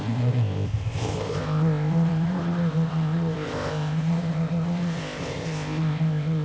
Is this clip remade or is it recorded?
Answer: remade